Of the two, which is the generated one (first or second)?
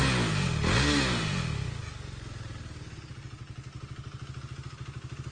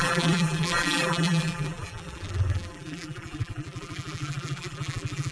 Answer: second